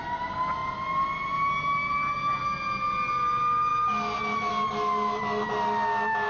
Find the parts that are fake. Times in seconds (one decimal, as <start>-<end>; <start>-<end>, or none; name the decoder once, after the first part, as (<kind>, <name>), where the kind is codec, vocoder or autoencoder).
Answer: none